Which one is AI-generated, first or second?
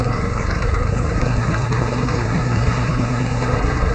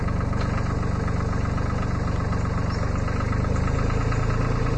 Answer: first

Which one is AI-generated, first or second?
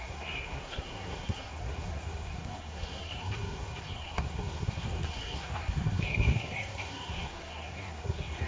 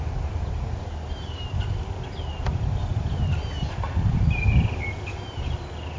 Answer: first